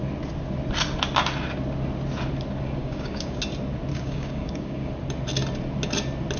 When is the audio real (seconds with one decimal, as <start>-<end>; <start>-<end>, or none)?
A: 0.0-2.8; 3.4-3.9; 4.9-6.4